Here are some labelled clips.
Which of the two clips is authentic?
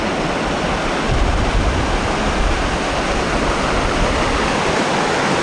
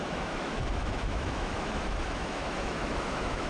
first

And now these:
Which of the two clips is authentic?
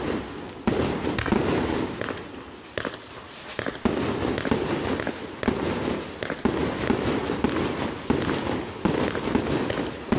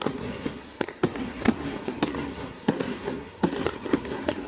first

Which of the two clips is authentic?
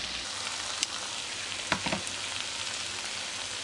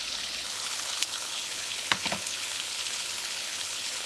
first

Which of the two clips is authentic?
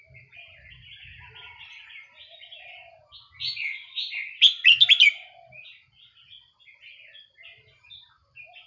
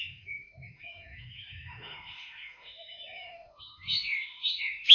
first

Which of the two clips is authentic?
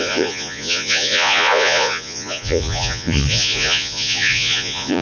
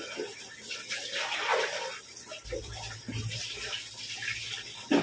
second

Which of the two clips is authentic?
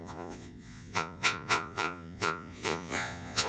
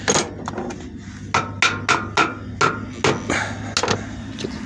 second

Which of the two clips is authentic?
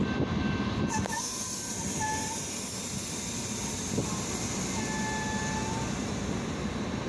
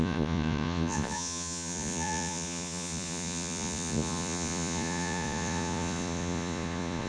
first